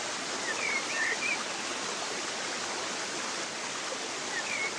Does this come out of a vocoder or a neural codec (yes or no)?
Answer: no